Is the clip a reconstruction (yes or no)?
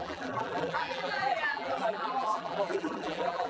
yes